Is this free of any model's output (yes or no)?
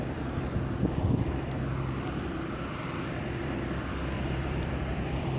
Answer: no